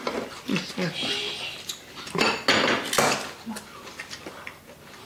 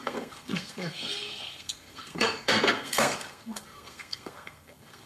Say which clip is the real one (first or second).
first